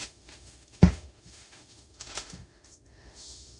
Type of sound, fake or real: fake